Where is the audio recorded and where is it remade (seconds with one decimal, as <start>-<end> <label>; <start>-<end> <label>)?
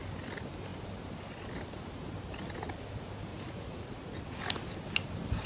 0.0-3.3 recorded; 3.3-4.4 remade; 4.4-5.5 recorded